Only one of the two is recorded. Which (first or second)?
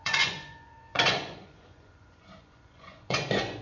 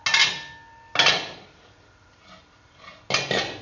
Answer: second